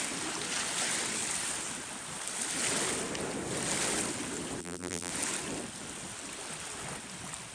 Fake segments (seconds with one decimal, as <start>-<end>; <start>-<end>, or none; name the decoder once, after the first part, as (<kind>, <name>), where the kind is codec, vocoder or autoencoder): 4.6-5.1 (vocoder, BigVGAN v2)